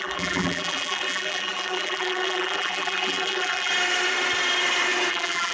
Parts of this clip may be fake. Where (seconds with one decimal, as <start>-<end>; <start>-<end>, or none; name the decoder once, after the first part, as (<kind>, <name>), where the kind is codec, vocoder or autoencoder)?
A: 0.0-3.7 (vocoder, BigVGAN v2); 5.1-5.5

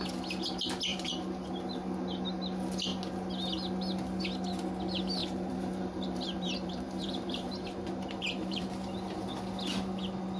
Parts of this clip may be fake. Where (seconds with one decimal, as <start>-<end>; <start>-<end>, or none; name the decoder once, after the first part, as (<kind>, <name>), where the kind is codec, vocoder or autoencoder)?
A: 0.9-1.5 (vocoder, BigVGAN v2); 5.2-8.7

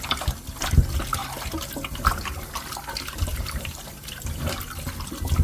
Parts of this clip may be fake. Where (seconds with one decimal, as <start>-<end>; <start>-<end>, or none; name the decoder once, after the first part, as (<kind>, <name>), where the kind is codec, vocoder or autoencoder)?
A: 3.3-4.6 (vocoder, BigVGAN v2)